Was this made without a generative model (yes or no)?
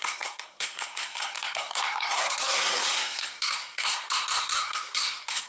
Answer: no